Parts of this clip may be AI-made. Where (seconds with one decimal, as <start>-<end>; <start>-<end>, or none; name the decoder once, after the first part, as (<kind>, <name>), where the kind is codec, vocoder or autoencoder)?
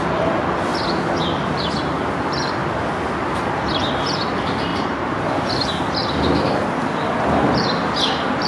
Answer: 0.7-1.8 (vocoder, BigVGAN v2); 4.7-5.7